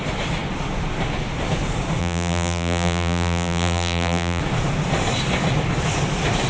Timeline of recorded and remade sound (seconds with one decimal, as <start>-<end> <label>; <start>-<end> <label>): 0.0-2.0 recorded; 2.0-4.4 remade; 4.4-6.5 recorded